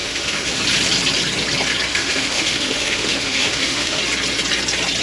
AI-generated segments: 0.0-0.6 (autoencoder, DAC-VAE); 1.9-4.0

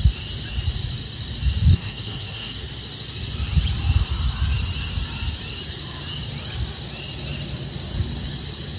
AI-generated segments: 1.7-2.6 (codec, SNAC)

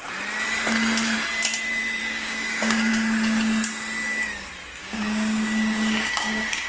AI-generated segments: 2.0-2.9 (codec, DAC); 4.8-6.7

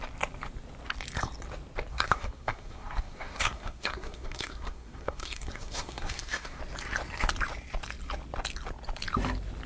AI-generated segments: 1.9-6.6 (codec, SNAC)

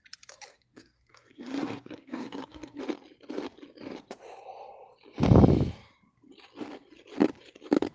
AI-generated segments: 0.5-2.8 (codec, SNAC)

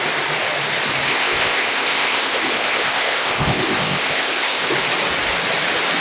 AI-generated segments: 1.1-4.7 (codec, ZipCodec)

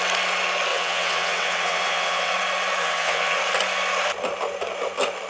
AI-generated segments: 0.7-2.3 (vocoder, WaveNeXt); 2.8-3.4

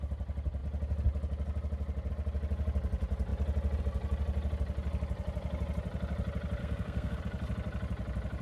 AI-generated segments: 6.6-7.2 (codec, SNAC)